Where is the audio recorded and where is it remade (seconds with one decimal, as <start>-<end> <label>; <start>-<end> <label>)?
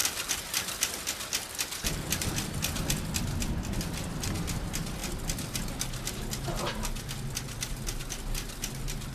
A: 0.0-3.6 remade; 3.6-9.1 recorded